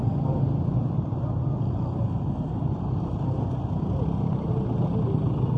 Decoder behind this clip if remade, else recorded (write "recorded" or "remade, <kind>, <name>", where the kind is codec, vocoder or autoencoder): recorded